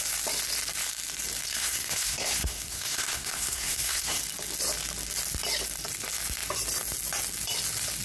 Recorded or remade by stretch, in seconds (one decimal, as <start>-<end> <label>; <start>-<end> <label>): 0.0-1.5 recorded; 1.5-4.2 remade; 4.2-8.0 recorded